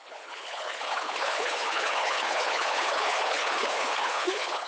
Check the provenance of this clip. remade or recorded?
remade